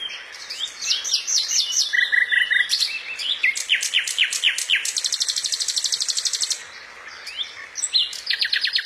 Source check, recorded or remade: recorded